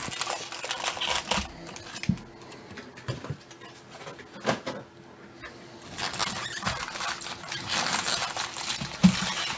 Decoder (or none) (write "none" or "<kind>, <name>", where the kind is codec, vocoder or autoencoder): none